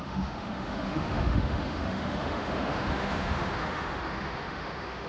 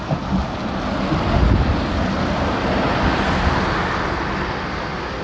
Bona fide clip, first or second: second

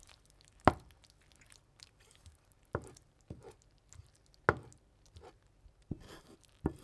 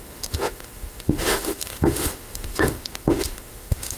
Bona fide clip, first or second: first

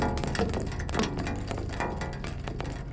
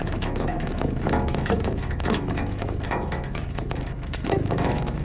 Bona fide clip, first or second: first